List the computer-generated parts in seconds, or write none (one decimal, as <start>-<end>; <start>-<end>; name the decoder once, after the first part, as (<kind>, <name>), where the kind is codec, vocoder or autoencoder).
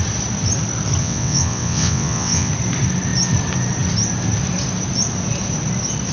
1.0-2.5 (vocoder, WaveNeXt)